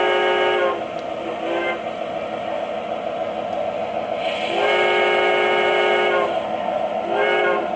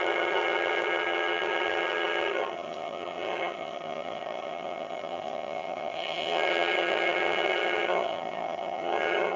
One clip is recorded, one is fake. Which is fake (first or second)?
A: second